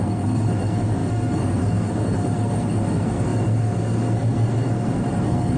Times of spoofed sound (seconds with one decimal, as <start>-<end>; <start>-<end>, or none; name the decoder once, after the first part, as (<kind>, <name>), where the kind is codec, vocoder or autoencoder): 0.0-5.6 (codec, SNAC)